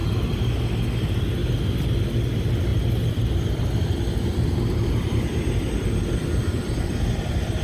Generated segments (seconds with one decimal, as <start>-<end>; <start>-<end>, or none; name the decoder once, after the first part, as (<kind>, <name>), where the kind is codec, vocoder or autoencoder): none